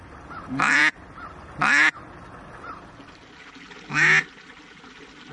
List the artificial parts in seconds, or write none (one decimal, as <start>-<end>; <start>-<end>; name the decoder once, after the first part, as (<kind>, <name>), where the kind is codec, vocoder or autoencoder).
none